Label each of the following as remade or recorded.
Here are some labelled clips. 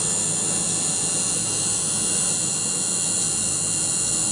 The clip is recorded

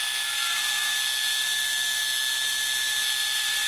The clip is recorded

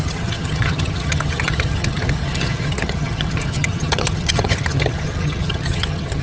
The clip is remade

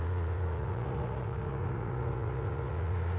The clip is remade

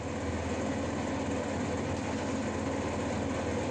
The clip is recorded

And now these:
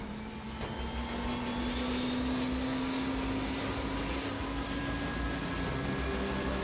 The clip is recorded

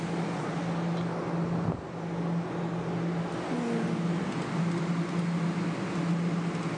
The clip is recorded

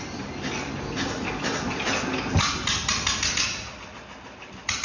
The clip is recorded